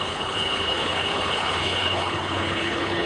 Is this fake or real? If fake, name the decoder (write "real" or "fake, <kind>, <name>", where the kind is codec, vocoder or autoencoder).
fake, codec, HILCodec